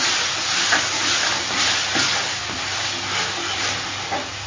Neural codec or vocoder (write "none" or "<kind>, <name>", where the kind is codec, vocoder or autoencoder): none